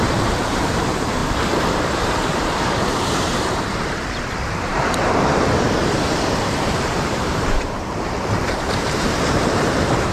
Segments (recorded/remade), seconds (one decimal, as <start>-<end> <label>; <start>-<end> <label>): 0.0-1.2 remade; 1.2-1.7 recorded; 1.7-10.1 remade